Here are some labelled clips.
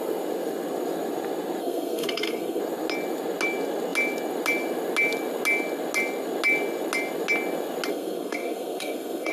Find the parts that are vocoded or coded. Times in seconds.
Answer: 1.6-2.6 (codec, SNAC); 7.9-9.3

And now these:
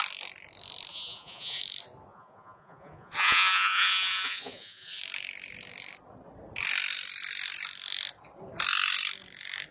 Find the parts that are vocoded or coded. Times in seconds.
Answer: 0.9-1.6 (vocoder, Vocos); 2.1-5.0

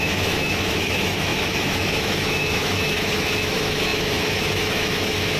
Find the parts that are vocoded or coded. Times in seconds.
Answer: 0.0-5.4 (autoencoder, DAC-VAE)

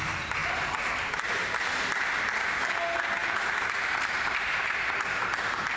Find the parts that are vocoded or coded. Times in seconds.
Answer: 0.4-1.1 (vocoder, BigVGAN v2); 3.2-4.8

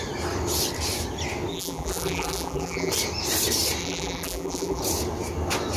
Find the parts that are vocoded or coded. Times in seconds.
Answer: 1.5-2.9 (vocoder, BigVGAN v2); 3.8-4.8